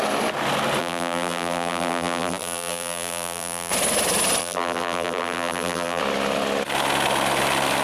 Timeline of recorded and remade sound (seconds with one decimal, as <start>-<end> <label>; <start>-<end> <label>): 0.0-0.8 recorded; 0.8-3.7 remade; 3.7-4.4 recorded; 4.4-6.0 remade; 6.0-7.8 recorded